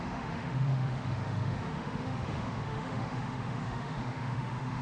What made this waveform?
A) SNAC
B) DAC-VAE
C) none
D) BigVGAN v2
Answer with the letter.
B